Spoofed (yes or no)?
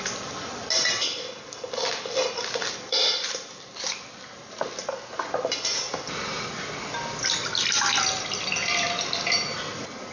no